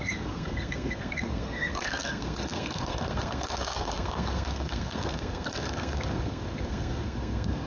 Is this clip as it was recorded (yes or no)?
no